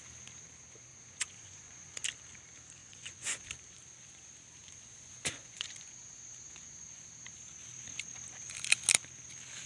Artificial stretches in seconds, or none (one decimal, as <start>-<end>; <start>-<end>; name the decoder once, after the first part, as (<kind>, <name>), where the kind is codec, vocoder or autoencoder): 0.9-2.0 (vocoder, Vocos); 2.8-3.4; 4.6-7.0